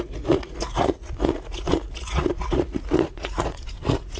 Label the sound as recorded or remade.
remade